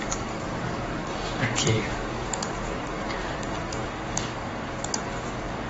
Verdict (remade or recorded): remade